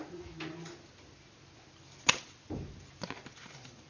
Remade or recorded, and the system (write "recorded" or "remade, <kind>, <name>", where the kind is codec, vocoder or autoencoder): recorded